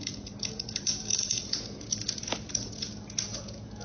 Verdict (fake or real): fake